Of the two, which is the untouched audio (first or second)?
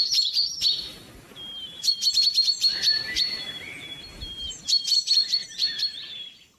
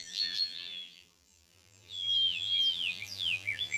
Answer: first